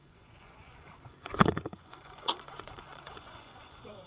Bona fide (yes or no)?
no